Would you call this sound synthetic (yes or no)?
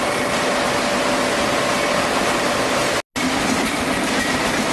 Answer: no